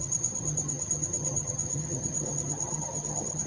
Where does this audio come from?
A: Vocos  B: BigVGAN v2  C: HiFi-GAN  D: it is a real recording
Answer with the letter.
C